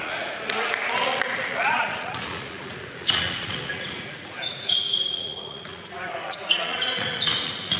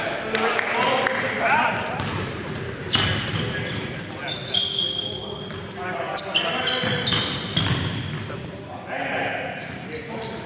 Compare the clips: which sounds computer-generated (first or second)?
first